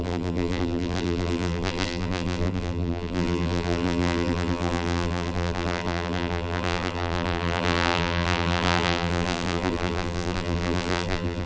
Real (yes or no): no